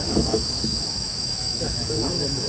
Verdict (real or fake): fake